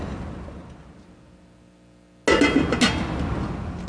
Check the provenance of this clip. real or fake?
real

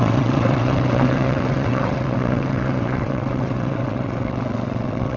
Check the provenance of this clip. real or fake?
fake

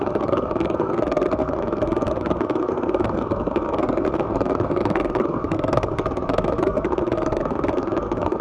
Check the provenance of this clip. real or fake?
fake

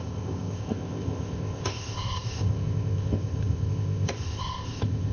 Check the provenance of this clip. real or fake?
fake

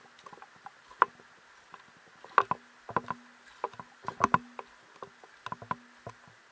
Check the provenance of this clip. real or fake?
real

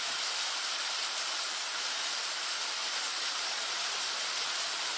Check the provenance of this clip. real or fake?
fake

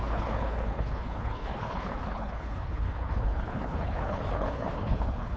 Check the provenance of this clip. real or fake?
fake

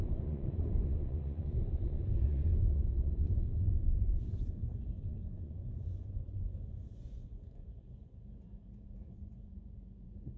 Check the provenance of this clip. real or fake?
fake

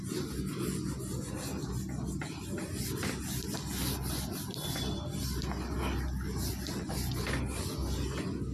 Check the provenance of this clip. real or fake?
real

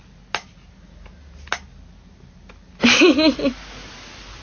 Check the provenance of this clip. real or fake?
real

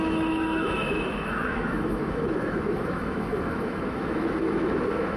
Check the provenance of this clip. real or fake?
fake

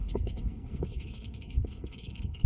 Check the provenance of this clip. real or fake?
fake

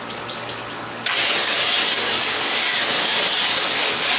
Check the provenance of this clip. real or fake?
fake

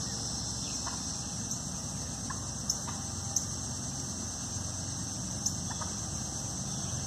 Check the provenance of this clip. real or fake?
real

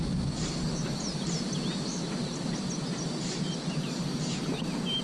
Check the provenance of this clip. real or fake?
real